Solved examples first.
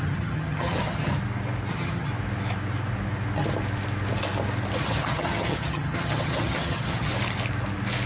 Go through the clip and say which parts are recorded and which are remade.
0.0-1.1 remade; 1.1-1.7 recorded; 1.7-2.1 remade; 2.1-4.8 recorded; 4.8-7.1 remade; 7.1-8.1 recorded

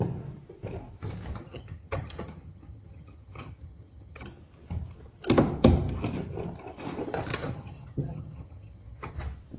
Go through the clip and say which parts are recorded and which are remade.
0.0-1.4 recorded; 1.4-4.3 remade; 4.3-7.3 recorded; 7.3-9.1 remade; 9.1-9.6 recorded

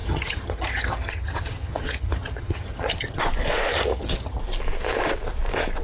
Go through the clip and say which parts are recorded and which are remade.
0.0-3.2 remade; 3.2-3.7 recorded; 3.7-4.4 remade; 4.4-5.8 recorded